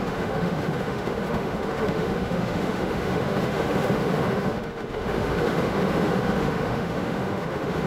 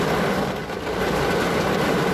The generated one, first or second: first